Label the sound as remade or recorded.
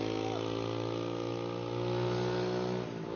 recorded